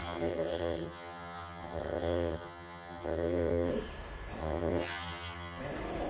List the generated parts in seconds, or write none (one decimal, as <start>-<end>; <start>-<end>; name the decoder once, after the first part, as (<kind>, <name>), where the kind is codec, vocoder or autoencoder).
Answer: 0.0-3.7 (vocoder, HiFi-GAN); 4.4-5.6